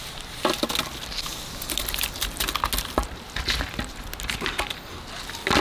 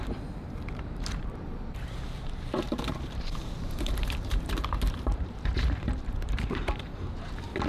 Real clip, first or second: first